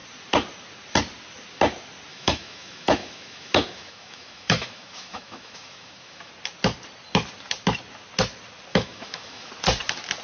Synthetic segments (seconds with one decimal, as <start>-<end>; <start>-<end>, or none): 2.1-6.3; 8.7-9.5

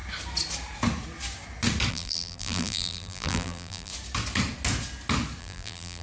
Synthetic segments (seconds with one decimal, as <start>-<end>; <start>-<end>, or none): 1.9-3.9; 5.4-6.0

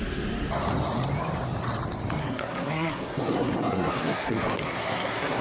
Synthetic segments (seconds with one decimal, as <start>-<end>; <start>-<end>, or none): 2.2-5.4

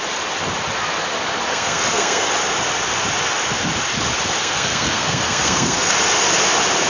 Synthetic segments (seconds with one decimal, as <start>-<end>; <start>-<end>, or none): 1.5-2.3; 4.4-5.9

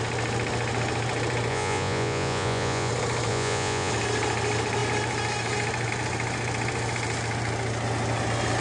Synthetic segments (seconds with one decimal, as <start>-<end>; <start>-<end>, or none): 1.5-2.9; 3.3-3.9